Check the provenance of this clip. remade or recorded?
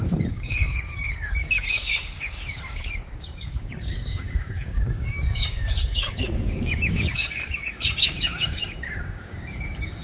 remade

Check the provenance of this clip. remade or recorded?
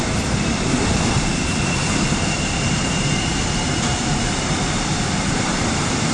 remade